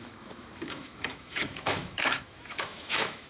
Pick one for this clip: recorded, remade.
remade